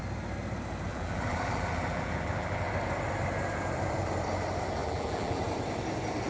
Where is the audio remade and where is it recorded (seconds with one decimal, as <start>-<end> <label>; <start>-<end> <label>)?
0.0-0.9 recorded; 0.9-2.7 remade; 2.7-4.8 recorded; 4.8-5.4 remade; 5.4-6.3 recorded